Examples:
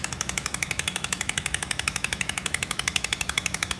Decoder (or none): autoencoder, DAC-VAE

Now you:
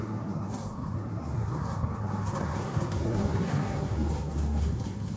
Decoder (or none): codec, SNAC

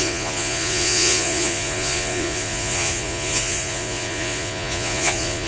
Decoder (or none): vocoder, Vocos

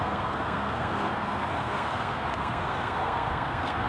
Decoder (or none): codec, SNAC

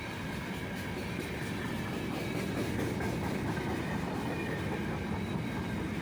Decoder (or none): none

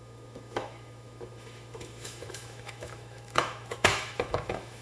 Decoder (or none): autoencoder, DAC-VAE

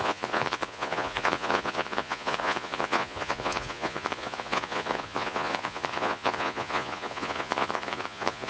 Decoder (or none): vocoder, Vocos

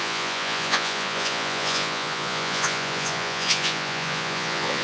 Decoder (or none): vocoder, Vocos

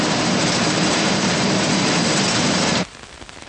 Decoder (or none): vocoder, BigVGAN v2